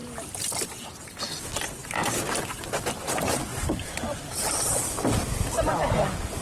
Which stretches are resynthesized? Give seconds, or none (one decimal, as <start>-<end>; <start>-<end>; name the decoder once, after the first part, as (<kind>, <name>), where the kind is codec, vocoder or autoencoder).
0.0-0.7 (vocoder, BigVGAN v2); 1.8-2.4; 3.5-5.0